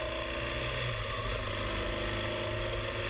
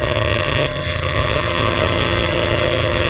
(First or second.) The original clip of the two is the first